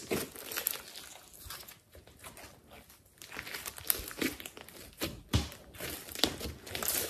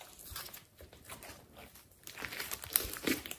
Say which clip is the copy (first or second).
second